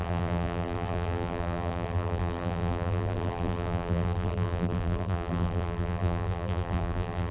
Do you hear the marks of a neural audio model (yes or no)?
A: yes